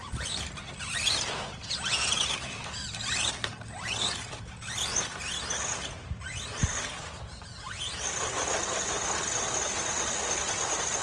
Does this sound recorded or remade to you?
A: recorded